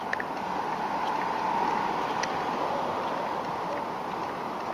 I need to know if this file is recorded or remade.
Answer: recorded